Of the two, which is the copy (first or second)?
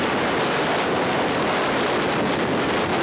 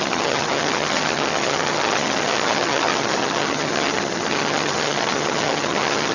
second